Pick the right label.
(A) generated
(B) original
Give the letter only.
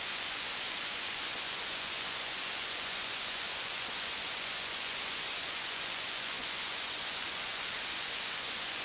A